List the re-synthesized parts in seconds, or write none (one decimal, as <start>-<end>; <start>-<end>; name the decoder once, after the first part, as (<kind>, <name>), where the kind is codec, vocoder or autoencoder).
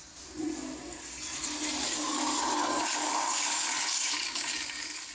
1.8-5.1 (codec, DAC)